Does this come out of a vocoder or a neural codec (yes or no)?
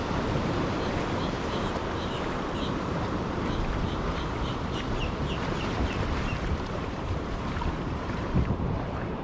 yes